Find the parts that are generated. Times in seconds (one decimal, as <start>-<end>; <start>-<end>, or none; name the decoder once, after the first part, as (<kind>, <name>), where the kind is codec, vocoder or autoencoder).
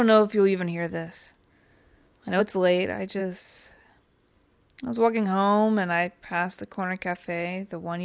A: 1.7-2.4 (codec, DAC); 3.2-3.9